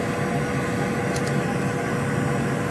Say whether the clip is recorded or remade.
recorded